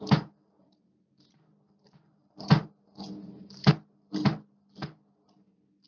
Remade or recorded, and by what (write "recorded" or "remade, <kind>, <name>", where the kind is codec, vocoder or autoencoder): recorded